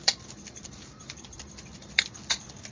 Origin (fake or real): fake